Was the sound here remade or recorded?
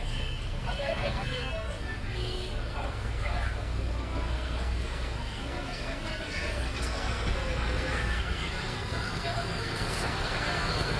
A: remade